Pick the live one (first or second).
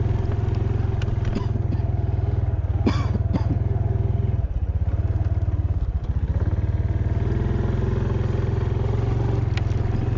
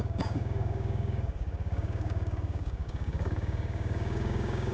first